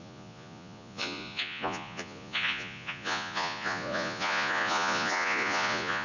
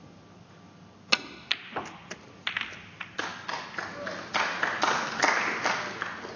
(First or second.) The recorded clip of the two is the second